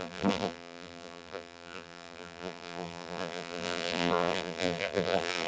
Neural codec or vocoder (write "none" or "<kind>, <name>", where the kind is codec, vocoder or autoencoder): vocoder, BigVGAN v2